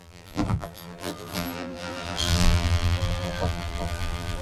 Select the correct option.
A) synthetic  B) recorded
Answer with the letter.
A